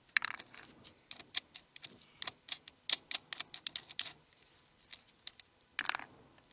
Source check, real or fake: real